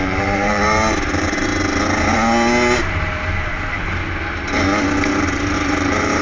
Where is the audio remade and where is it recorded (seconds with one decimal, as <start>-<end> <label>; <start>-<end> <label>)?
0.0-1.5 remade; 1.5-5.2 recorded; 5.2-6.2 remade